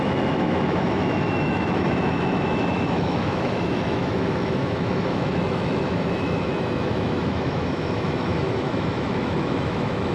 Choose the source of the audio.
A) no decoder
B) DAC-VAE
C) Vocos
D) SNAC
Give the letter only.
B